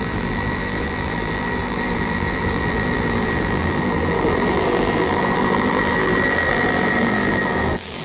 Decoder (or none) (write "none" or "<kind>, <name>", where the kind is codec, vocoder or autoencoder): vocoder, BigVGAN v2